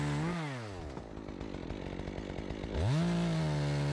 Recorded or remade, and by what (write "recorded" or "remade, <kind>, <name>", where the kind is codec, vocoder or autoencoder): recorded